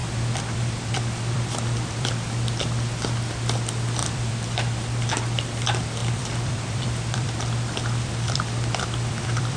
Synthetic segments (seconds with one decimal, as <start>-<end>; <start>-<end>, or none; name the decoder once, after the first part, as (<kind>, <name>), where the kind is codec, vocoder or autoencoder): 0.0-2.1 (vocoder, BigVGAN v2); 4.0-5.2; 6.0-9.6